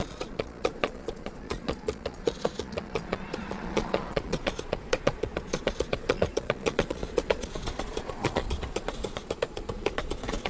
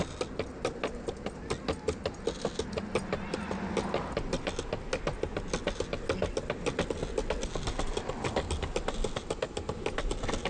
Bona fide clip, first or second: second